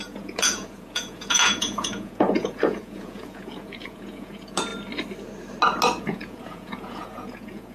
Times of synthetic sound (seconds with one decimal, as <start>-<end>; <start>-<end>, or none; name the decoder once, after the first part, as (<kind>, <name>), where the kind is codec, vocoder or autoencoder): 0.0-4.7 (vocoder, Vocos); 6.0-7.7